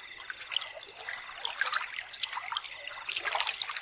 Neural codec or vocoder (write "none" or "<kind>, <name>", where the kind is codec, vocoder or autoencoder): none